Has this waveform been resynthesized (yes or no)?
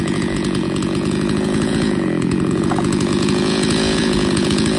yes